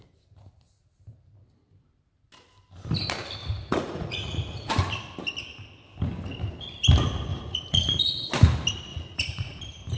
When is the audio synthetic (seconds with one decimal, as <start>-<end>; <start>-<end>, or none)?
3.4-4.7; 7.3-8.0; 8.9-9.6